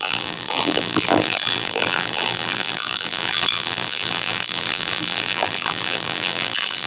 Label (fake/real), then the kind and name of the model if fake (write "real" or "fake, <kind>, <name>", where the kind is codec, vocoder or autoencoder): fake, vocoder, BigVGAN v2